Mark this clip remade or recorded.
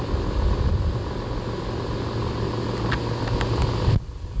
recorded